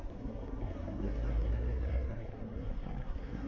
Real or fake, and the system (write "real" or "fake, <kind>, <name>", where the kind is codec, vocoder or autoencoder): fake, codec, SNAC